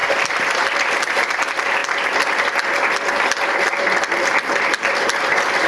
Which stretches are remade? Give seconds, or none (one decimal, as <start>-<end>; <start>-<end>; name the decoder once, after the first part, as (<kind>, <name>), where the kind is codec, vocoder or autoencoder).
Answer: none